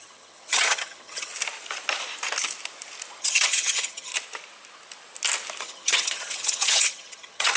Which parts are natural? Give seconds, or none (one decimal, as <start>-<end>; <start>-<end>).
1.3-3.2; 4.1-5.6